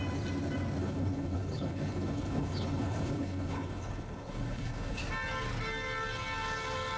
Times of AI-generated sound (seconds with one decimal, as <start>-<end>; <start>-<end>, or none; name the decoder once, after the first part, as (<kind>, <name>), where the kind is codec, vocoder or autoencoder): 0.8-5.0 (codec, HILCodec)